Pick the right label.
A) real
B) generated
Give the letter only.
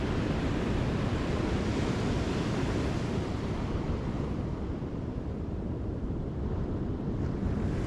A